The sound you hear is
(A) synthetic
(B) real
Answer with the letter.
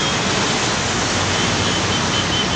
B